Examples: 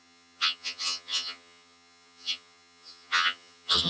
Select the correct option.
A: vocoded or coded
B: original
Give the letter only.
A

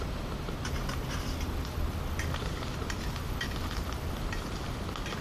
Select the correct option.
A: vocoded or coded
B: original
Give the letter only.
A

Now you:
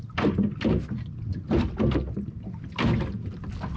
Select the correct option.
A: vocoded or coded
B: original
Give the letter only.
B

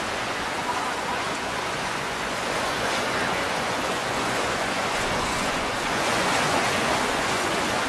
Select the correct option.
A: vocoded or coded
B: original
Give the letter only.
A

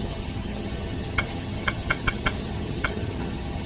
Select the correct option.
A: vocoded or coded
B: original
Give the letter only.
A